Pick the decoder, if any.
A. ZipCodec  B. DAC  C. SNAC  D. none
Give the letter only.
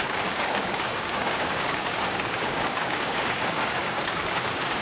B